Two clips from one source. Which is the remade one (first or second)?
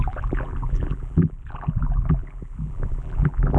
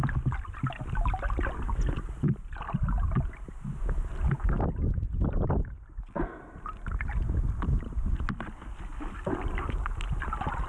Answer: first